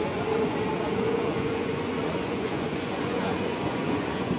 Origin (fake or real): fake